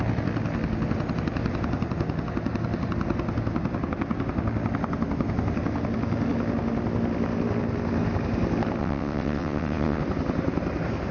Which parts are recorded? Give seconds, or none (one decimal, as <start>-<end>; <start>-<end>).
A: 0.0-8.8; 10.0-11.1

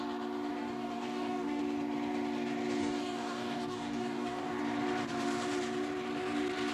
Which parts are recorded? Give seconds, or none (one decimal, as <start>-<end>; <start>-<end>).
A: 0.0-0.5; 1.6-2.8; 4.6-6.7

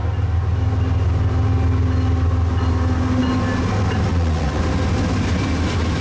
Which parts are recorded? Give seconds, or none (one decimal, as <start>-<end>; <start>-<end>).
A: 0.0-4.1; 4.6-6.0

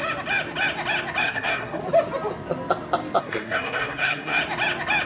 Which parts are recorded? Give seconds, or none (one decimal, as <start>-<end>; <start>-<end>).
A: 0.0-1.2; 1.8-3.2; 4.4-5.1